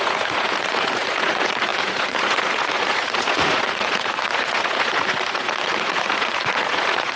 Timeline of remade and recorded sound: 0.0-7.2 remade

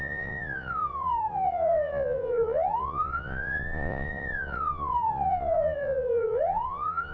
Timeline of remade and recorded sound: 0.0-7.1 remade

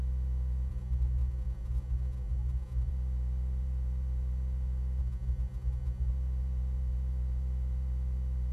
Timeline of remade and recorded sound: 0.0-0.7 recorded; 0.7-2.9 remade; 2.9-5.0 recorded; 5.0-6.1 remade; 6.1-8.5 recorded

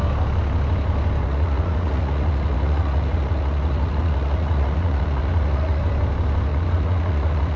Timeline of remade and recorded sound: 0.0-1.2 recorded; 1.2-5.8 remade; 5.8-6.5 recorded; 6.5-7.6 remade

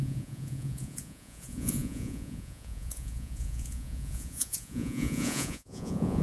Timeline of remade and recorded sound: 0.0-6.2 remade

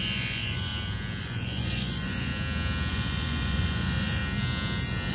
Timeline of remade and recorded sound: 0.0-0.7 remade; 0.7-1.2 recorded; 1.2-2.3 remade; 2.3-2.9 recorded; 2.9-4.2 remade; 4.2-5.1 recorded